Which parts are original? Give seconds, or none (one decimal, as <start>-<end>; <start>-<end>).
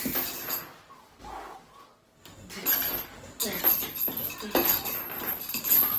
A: 0.0-6.0